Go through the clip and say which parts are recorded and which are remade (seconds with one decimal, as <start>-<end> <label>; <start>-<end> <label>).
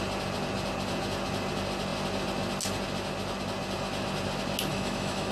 0.0-4.7 recorded; 4.7-5.3 remade